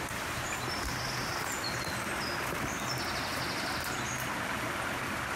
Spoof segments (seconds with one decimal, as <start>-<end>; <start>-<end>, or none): none